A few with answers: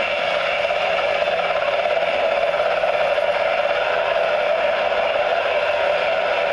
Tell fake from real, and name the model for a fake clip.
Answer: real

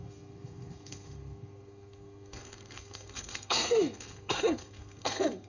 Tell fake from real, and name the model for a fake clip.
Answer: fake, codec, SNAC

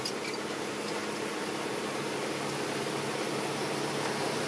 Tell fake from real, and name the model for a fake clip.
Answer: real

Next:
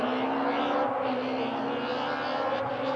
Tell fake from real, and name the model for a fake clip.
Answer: real